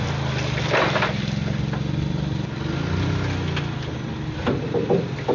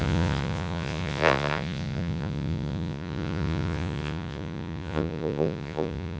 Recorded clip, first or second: first